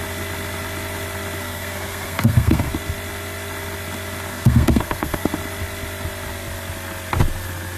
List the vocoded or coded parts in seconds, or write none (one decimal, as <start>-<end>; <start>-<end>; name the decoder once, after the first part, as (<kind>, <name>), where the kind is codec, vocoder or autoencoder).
1.4-2.7 (codec, SNAC); 4.3-5.3